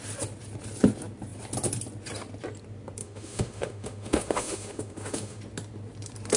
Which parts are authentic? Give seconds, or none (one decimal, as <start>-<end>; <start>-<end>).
0.0-3.0; 5.4-6.4

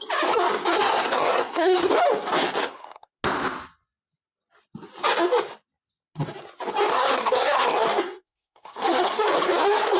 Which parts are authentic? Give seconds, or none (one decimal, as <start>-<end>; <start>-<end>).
0.0-0.7; 1.9-2.6; 3.1-6.9; 9.2-10.0

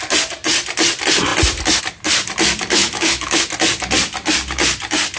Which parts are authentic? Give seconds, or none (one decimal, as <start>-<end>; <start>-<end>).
0.0-2.8; 3.4-5.2

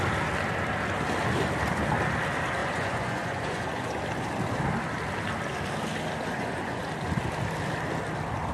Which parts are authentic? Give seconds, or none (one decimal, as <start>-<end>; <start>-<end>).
0.0-2.6; 4.0-6.3; 6.9-8.5

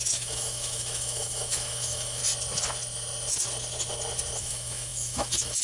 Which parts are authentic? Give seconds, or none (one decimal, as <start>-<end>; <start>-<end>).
2.2-4.4

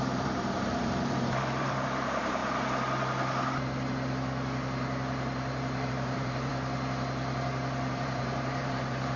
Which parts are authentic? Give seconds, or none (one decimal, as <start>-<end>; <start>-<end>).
2.4-5.9; 6.5-7.9

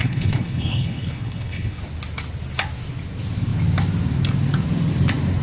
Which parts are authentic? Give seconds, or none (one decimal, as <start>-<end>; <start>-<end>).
1.8-5.4